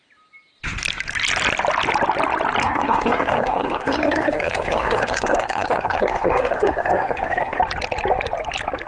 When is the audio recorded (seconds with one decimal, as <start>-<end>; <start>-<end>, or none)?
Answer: 0.0-2.6; 7.6-8.9